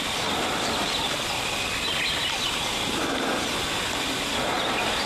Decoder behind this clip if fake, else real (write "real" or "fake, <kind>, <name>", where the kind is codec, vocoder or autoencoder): real